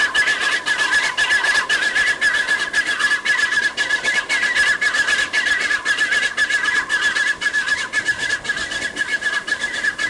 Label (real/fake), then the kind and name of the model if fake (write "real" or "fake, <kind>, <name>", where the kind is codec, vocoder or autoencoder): real